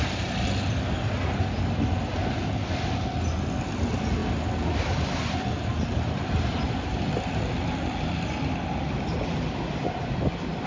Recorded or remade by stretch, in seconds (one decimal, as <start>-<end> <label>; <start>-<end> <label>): 0.0-10.7 recorded